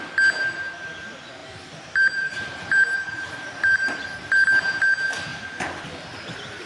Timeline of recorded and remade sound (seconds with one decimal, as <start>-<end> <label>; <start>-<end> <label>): 0.0-1.4 recorded; 1.4-4.3 remade; 4.3-5.3 recorded; 5.3-5.9 remade; 5.9-6.7 recorded